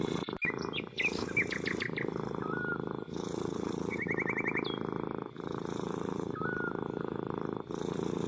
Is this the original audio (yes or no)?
yes